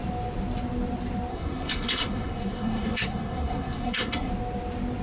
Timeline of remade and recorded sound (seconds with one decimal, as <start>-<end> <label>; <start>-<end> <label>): 0.0-1.3 recorded; 1.3-4.3 remade; 4.3-5.0 recorded

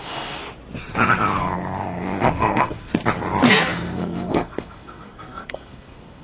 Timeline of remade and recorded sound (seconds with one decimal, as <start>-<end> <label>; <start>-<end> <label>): 0.0-0.4 remade; 0.4-1.4 recorded; 1.4-2.9 remade; 2.9-3.5 recorded; 3.5-6.2 remade

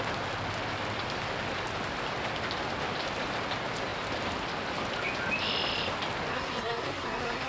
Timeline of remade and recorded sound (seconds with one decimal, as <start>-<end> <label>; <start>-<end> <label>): 0.0-6.3 recorded; 6.3-7.5 remade

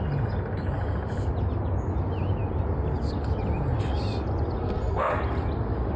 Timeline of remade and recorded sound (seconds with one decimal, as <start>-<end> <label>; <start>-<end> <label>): 0.0-4.6 recorded; 4.6-5.1 remade; 5.1-6.0 recorded

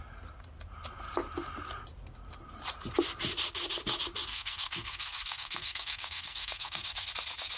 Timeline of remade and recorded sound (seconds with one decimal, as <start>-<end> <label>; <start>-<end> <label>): 0.0-4.3 recorded; 4.3-7.1 remade; 7.1-7.6 recorded

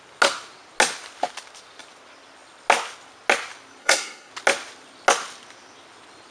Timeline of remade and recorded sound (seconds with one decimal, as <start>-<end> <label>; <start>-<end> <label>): 0.0-3.8 recorded; 3.8-4.3 remade; 4.3-6.3 recorded

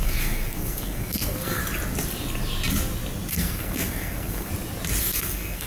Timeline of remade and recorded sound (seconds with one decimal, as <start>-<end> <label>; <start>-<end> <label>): 0.0-1.6 remade; 1.6-3.3 recorded; 3.3-4.5 remade; 4.5-5.0 recorded; 5.0-5.7 remade